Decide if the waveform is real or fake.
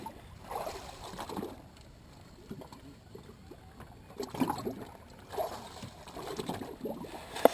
real